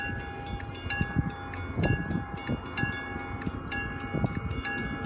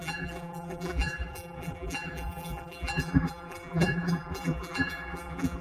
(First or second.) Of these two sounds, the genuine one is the first